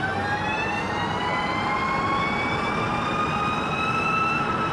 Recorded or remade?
recorded